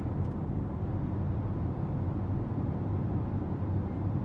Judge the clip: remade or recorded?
recorded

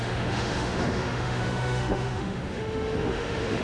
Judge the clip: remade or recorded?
remade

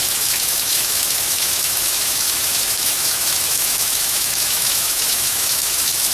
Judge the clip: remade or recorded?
remade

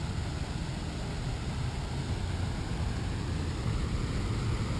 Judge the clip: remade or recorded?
recorded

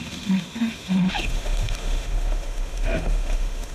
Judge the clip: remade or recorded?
remade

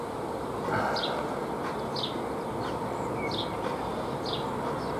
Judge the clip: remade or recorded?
recorded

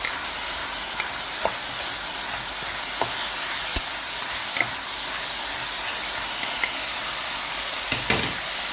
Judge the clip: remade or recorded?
recorded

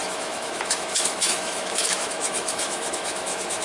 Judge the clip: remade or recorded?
remade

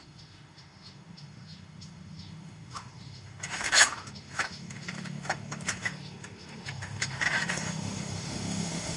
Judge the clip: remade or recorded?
remade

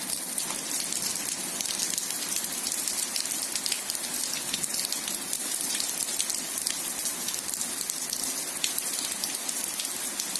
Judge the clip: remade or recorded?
recorded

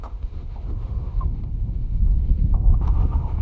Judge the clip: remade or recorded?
remade